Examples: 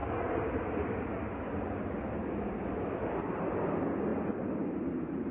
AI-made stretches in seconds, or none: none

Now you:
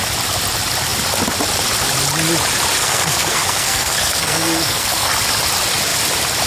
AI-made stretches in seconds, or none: 2.8-5.1

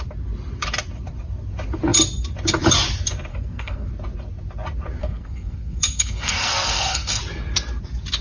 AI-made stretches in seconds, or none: 3.3-3.9; 5.0-7.2

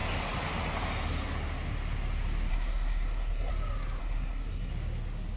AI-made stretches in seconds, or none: 2.5-3.5; 4.0-4.7

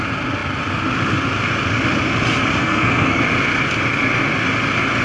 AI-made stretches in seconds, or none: 2.6-3.2

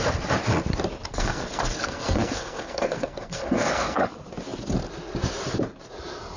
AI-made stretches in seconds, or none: 1.1-4.0